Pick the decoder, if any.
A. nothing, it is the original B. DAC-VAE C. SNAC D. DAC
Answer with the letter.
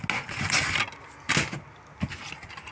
A